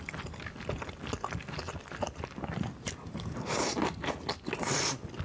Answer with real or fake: real